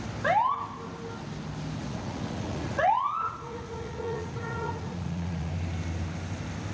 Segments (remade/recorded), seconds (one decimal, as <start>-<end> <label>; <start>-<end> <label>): 0.0-1.8 recorded; 1.8-5.5 remade; 5.5-6.7 recorded